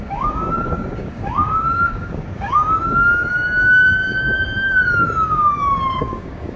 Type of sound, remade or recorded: remade